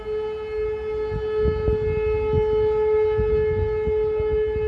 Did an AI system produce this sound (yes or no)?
no